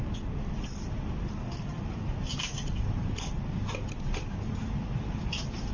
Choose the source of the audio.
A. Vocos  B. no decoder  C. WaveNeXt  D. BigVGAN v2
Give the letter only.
B